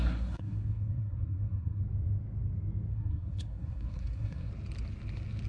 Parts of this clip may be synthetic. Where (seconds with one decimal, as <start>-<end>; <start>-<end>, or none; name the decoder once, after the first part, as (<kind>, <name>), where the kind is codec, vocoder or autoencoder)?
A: 0.0-1.8 (codec, SNAC); 2.9-4.5